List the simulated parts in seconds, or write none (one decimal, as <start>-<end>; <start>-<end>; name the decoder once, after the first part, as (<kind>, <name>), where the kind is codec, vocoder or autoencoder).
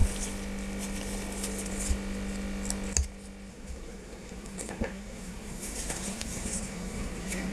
3.5-7.5 (codec, SNAC)